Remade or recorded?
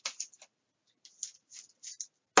recorded